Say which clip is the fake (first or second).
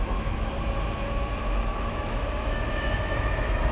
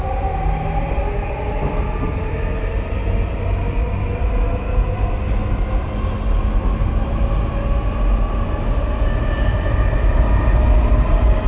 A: first